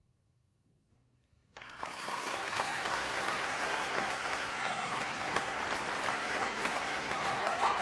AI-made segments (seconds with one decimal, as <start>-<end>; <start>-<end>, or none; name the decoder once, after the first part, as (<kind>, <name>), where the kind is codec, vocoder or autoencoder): 0.0-5.6 (codec, SNAC); 6.1-7.8

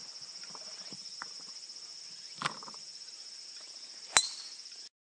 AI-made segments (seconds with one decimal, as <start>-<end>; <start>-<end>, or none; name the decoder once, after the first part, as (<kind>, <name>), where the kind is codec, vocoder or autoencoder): none

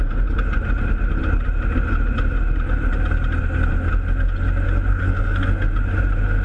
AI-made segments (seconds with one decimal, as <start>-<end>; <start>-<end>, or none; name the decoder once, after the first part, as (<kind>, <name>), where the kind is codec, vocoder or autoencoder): 4.9-5.5 (codec, SNAC)

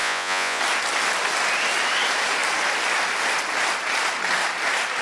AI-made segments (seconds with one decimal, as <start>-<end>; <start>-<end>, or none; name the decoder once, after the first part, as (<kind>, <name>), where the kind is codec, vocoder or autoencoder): 0.0-0.6 (vocoder, Vocos)

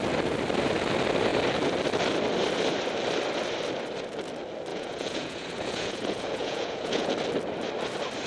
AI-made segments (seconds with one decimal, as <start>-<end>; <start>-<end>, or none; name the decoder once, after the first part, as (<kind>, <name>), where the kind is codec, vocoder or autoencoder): 4.7-7.1 (vocoder, Vocos)

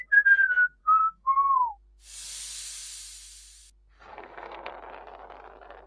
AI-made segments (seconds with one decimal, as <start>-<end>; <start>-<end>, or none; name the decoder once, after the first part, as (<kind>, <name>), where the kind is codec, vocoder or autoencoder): 0.8-1.7 (codec, SNAC); 4.1-4.7